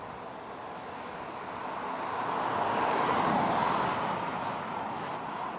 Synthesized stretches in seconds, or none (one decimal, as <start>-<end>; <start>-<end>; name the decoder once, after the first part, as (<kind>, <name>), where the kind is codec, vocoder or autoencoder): none